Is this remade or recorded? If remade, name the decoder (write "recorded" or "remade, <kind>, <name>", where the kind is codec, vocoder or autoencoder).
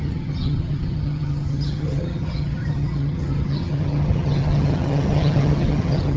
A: remade, vocoder, HiFi-GAN